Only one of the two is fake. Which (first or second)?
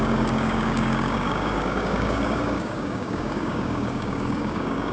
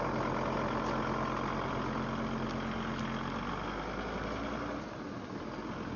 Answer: first